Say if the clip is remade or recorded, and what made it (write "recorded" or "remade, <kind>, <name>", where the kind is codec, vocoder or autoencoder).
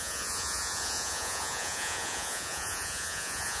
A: remade, vocoder, Vocos